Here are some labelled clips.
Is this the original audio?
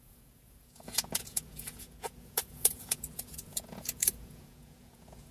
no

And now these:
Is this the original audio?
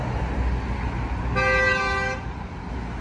yes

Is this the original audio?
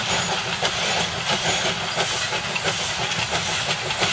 yes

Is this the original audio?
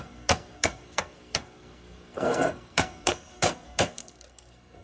no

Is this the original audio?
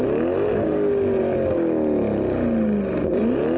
yes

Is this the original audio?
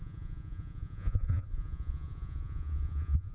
no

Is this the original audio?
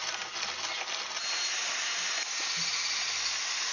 yes